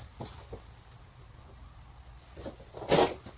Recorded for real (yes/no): yes